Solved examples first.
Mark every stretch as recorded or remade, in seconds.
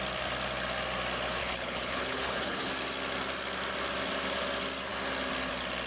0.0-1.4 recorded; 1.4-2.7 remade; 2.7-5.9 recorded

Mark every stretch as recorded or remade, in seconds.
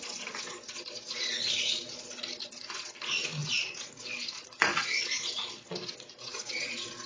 0.0-7.1 remade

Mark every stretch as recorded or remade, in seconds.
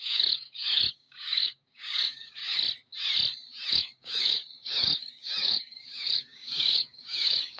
0.0-2.4 remade; 2.4-3.7 recorded; 3.7-7.6 remade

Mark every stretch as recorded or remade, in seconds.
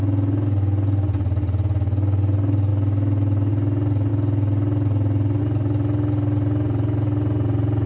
0.0-7.9 recorded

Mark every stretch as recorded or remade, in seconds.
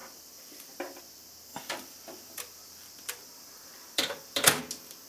0.0-1.0 remade; 1.0-1.5 recorded; 1.5-4.6 remade; 4.6-5.1 recorded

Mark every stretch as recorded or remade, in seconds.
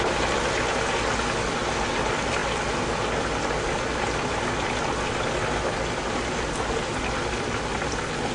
0.0-8.3 recorded